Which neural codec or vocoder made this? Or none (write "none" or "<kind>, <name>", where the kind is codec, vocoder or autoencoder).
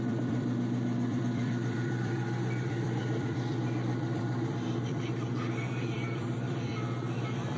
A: vocoder, BigVGAN v2